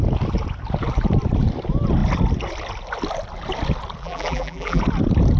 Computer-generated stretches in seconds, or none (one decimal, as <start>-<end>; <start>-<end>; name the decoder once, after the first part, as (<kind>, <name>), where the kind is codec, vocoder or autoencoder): 4.0-4.8 (vocoder, BigVGAN v2)